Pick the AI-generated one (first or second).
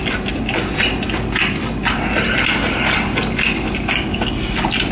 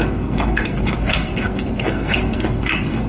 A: second